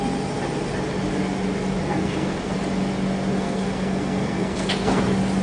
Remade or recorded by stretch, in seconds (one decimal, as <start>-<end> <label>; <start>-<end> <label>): 0.0-1.8 recorded; 1.8-2.6 remade; 2.6-3.3 recorded; 3.3-5.0 remade; 5.0-5.4 recorded